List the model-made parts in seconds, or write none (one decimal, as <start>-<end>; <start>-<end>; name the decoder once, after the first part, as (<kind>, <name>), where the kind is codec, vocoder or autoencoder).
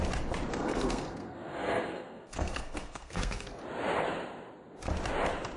0.5-3.6 (codec, SNAC)